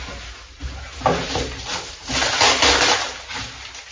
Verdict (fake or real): real